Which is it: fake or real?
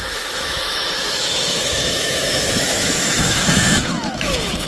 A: fake